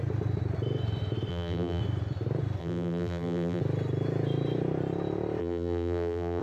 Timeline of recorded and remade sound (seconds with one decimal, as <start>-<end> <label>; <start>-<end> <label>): 0.0-1.3 recorded; 1.3-1.8 remade; 1.8-2.6 recorded; 2.6-3.6 remade; 3.6-5.4 recorded; 5.4-6.4 remade

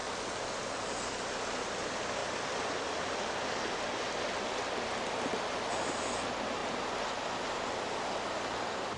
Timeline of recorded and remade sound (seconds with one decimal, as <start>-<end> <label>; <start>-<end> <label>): 0.0-1.1 remade; 1.1-2.2 recorded; 2.2-3.6 remade; 3.6-9.0 recorded